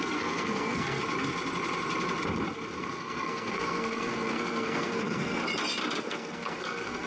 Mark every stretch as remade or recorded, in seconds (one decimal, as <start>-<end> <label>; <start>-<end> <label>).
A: 0.0-1.0 remade; 1.0-2.8 recorded; 2.8-5.4 remade; 5.4-6.0 recorded; 6.0-7.1 remade